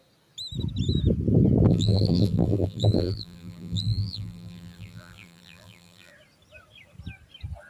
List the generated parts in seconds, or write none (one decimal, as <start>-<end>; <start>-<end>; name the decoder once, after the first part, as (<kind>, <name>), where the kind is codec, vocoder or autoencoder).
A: 1.7-6.1 (vocoder, BigVGAN v2)